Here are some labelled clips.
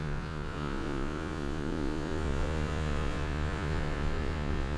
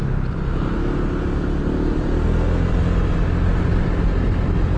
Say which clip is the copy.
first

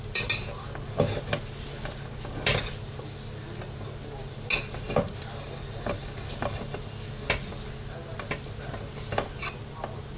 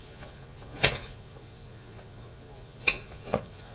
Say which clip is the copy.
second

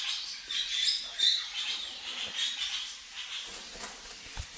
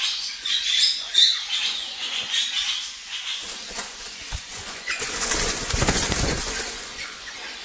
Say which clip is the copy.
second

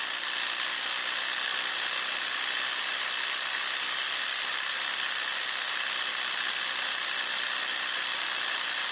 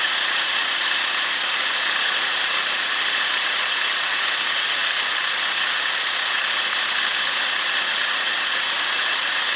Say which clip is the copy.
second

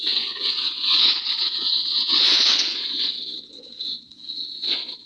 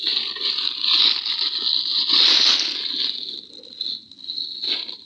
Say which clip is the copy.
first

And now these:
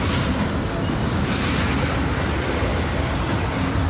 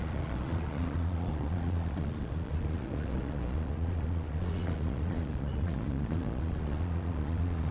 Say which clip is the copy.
second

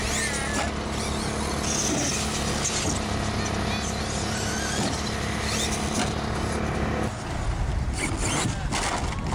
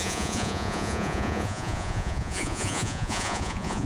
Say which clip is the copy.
second